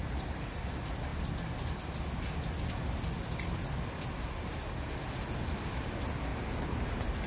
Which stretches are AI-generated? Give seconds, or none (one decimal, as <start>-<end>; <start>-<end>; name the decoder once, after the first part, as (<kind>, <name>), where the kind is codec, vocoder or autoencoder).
0.0-0.6 (vocoder, BigVGAN v2); 6.3-7.3